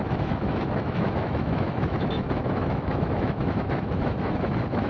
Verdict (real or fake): fake